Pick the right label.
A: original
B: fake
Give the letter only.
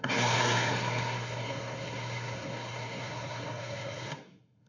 B